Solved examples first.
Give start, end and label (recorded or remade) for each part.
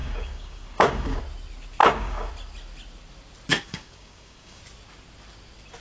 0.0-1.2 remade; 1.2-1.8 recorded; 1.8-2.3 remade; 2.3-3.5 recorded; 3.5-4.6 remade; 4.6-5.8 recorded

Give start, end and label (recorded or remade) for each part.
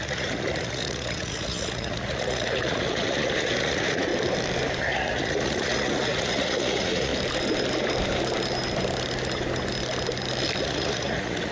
0.0-4.1 remade; 4.1-4.8 recorded; 4.8-7.1 remade; 7.1-10.6 recorded; 10.6-11.5 remade